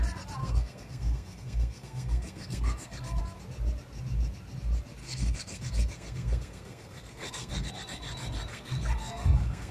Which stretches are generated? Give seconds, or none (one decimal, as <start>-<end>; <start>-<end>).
0.4-3.2; 5.0-7.7; 8.5-9.7